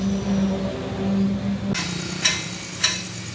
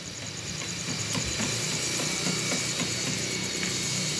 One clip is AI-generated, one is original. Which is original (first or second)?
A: first